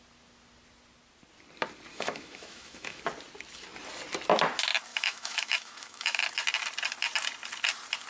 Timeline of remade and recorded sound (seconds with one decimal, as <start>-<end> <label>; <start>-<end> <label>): 0.0-1.9 recorded; 1.9-3.0 remade; 3.0-4.9 recorded; 4.9-6.2 remade; 6.2-8.1 recorded